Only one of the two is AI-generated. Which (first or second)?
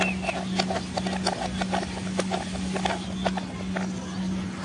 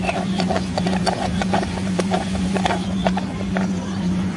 second